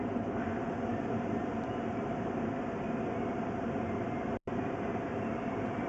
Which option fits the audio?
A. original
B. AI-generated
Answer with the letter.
A